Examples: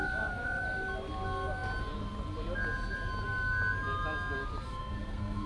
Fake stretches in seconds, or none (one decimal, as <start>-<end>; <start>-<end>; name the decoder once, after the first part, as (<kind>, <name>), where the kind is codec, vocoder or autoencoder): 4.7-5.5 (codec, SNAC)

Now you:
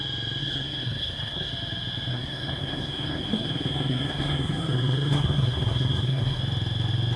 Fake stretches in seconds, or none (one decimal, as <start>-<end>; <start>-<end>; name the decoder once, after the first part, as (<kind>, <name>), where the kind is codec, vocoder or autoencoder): 0.4-1.5 (codec, SNAC); 2.1-6.4

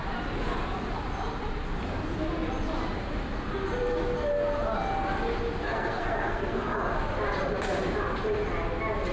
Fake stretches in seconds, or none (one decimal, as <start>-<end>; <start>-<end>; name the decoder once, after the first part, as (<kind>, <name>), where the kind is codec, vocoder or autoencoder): 5.6-6.8 (codec, SNAC)

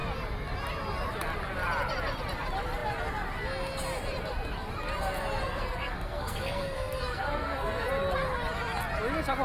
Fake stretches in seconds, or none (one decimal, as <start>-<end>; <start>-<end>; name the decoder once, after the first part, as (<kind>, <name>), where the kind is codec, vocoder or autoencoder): 5.4-7.9 (codec, SNAC)

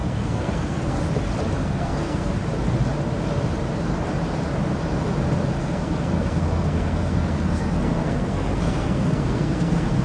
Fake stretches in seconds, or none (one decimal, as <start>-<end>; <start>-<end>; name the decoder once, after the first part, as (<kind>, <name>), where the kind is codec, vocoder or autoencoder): 0.0-1.0 (codec, SNAC); 1.6-2.3; 5.6-10.0

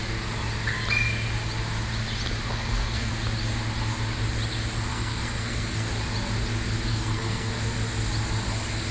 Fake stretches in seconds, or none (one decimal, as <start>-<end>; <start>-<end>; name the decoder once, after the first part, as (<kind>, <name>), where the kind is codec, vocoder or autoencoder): 2.5-3.1 (codec, SNAC); 4.9-5.9; 6.9-7.5

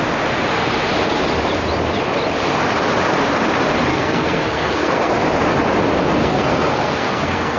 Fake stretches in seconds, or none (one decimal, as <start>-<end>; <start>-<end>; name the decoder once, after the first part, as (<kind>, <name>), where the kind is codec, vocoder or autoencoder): 3.9-5.1 (codec, SNAC); 6.2-7.6